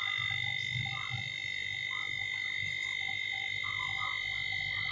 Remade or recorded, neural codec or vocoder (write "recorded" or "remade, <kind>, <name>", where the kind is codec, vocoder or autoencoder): recorded